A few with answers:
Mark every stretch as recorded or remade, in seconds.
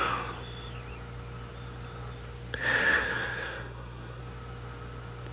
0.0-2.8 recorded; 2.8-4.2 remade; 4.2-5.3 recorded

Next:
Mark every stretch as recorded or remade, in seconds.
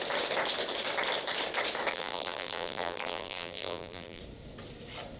0.0-1.9 recorded; 1.9-4.2 remade; 4.2-5.2 recorded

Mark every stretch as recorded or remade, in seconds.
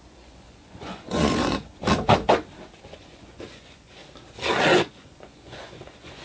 0.0-1.8 remade; 1.8-2.8 recorded; 2.8-4.0 remade; 4.0-4.7 recorded; 4.7-6.2 remade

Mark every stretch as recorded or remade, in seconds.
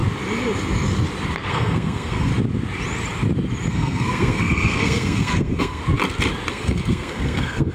0.0-1.5 recorded; 1.5-2.3 remade; 2.3-3.7 recorded; 3.7-5.8 remade; 5.8-6.5 recorded; 6.5-7.7 remade